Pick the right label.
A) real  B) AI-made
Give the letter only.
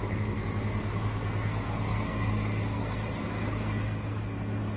B